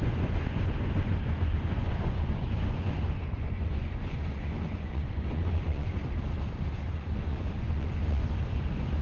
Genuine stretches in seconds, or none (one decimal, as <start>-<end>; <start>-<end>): 6.0-6.9